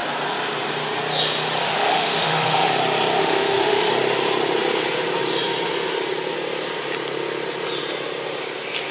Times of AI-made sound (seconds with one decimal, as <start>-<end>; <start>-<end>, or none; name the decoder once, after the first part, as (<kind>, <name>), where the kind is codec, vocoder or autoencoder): 1.6-2.7 (autoencoder, DAC-VAE); 3.2-3.9

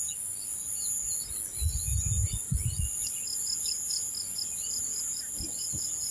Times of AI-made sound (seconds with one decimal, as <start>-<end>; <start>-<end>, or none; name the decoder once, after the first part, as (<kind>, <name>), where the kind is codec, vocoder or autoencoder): none

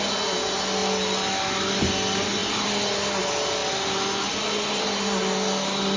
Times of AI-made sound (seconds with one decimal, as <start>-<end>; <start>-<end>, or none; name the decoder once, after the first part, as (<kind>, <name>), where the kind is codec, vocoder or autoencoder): none

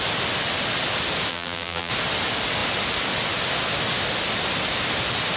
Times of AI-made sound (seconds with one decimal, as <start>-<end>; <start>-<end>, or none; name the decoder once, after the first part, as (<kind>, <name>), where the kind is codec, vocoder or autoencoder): 1.3-1.9 (vocoder, BigVGAN v2)

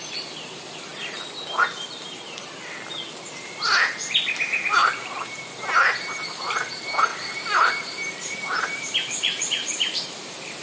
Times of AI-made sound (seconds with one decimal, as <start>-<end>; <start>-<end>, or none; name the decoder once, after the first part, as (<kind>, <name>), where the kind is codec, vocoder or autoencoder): 4.8-5.3 (vocoder, BigVGAN v2); 7.1-10.0